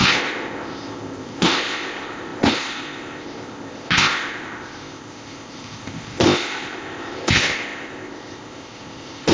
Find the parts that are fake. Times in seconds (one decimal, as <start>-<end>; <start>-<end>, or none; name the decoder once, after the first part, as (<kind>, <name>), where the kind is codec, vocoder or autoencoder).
0.0-9.3 (codec, ZipCodec)